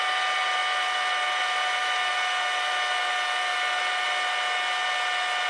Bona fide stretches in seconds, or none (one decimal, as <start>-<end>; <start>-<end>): 0.0-5.5